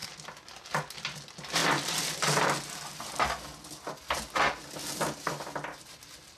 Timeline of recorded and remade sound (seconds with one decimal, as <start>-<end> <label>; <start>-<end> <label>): 0.0-6.4 recorded

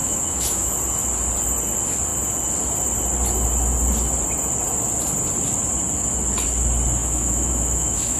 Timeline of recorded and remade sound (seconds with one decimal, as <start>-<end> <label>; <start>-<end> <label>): 0.0-0.7 remade; 0.7-7.0 recorded; 7.0-8.2 remade